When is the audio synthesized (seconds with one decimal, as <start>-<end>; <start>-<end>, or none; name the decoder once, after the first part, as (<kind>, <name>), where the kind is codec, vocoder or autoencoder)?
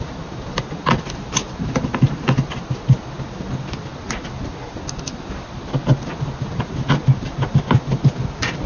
none